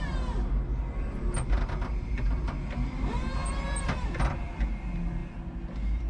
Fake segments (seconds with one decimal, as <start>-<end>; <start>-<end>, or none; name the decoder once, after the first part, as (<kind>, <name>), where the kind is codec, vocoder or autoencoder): 3.4-4.5 (vocoder, BigVGAN v2)